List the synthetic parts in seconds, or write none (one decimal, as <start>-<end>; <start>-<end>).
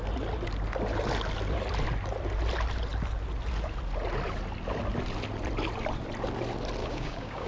6.8-7.5